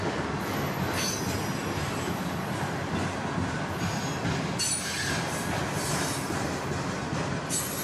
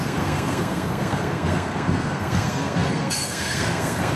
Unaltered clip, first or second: first